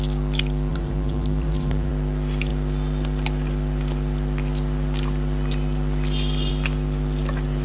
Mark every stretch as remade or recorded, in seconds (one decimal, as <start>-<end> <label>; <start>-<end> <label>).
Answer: 0.0-0.7 recorded; 0.7-1.9 remade; 1.9-7.6 recorded